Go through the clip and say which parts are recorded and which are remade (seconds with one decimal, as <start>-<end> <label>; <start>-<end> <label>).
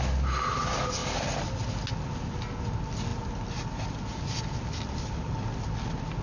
0.0-6.2 recorded